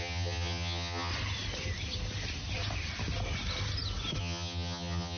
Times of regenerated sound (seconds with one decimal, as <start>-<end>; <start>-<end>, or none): 0.0-1.1; 4.2-5.2